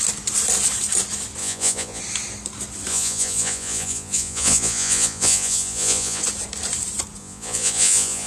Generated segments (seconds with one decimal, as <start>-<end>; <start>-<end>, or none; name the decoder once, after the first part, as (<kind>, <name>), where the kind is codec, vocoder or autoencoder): 1.4-2.0 (vocoder, Vocos); 2.9-6.2; 7.2-8.3